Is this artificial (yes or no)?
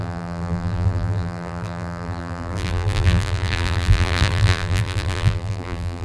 yes